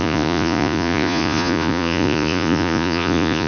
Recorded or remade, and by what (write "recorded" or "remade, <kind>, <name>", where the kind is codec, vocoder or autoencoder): remade, vocoder, Vocos